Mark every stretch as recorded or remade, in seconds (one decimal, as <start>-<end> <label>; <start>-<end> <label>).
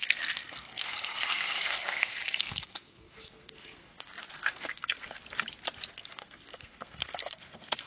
0.0-5.2 remade; 5.2-5.9 recorded; 5.9-7.9 remade